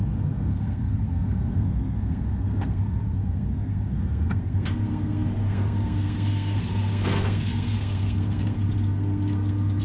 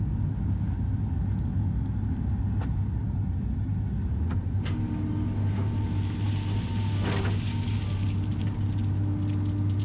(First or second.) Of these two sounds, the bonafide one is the second